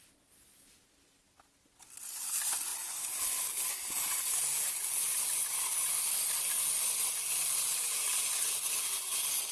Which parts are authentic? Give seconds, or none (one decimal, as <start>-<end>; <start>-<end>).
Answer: 0.0-9.5